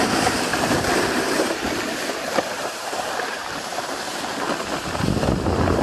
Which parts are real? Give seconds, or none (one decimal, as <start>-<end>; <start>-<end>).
0.0-0.5; 3.1-5.8

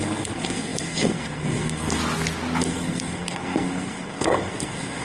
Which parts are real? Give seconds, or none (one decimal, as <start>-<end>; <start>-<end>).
2.0-2.6

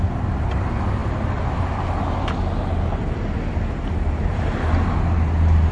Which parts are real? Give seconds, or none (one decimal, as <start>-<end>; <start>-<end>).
0.0-5.7

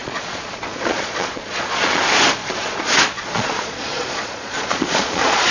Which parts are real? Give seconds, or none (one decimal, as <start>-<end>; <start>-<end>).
2.0-2.4

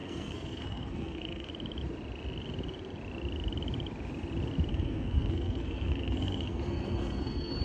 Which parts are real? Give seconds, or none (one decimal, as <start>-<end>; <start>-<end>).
1.5-4.7